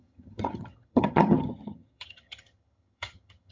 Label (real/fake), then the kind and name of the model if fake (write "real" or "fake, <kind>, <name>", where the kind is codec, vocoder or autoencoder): fake, vocoder, HiFi-GAN